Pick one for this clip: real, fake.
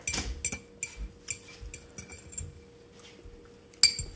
real